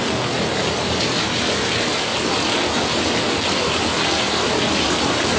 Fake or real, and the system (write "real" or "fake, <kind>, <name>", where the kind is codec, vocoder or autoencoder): real